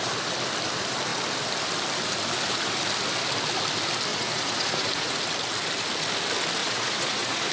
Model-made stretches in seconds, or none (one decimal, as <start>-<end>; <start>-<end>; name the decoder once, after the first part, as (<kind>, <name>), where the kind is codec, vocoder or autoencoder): 4.1-5.2 (vocoder, Vocos); 6.6-7.5